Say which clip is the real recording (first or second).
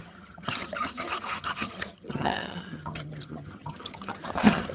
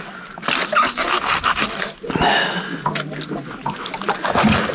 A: second